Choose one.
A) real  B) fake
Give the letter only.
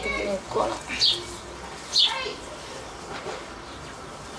A